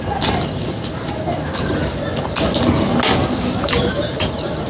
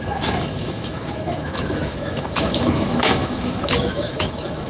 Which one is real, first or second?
first